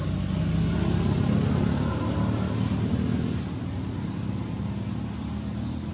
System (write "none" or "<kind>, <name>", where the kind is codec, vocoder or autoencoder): none